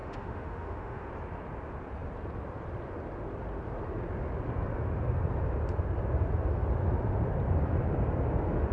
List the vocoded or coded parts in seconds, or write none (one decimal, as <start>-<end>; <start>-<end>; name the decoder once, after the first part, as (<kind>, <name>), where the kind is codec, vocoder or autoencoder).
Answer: 0.0-1.1 (autoencoder, DAC-VAE)